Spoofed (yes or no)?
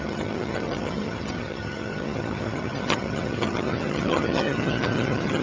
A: yes